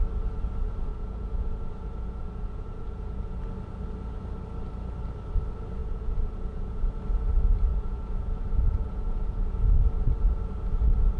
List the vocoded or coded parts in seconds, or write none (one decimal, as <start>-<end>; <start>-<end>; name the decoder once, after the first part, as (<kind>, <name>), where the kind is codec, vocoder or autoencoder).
0.9-3.4 (vocoder, Vocos); 5.8-7.0; 7.7-9.5